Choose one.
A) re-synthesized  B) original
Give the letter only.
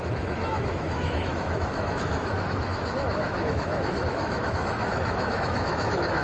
A